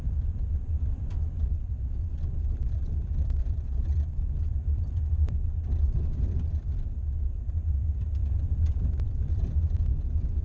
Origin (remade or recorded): remade